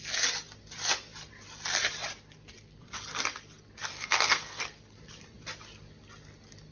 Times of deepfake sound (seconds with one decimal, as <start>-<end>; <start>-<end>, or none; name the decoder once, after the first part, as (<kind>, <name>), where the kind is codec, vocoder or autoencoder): 3.9-4.6 (codec, SNAC)